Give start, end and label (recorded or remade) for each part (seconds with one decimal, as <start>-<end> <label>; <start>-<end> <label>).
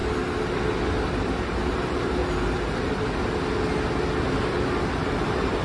0.0-1.3 recorded; 1.3-2.2 remade; 2.2-4.7 recorded; 4.7-5.6 remade